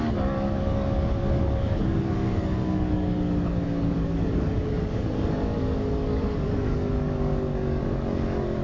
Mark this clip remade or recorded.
remade